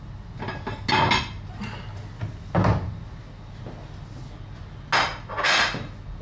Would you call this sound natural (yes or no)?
yes